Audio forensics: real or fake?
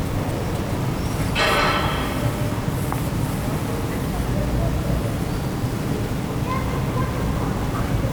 real